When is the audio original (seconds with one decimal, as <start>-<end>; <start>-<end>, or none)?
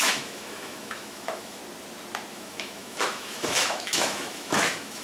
1.6-2.3